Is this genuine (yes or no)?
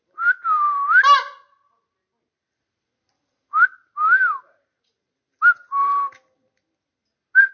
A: yes